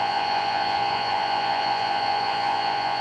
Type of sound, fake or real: fake